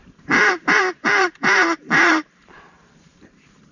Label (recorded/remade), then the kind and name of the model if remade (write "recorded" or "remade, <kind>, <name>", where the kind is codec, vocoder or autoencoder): remade, vocoder, BigVGAN v2